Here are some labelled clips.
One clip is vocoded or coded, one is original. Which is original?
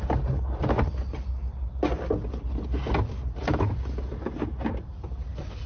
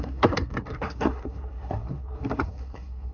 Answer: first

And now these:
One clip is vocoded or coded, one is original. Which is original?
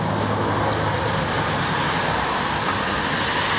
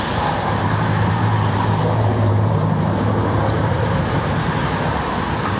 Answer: first